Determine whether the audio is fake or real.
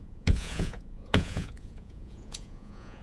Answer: fake